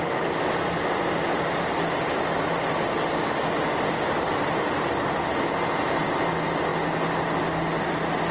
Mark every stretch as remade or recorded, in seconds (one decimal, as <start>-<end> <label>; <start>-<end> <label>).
0.0-8.3 recorded